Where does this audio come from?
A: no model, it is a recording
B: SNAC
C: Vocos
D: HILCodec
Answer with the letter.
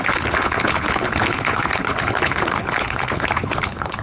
D